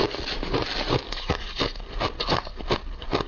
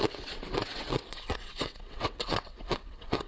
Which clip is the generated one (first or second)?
second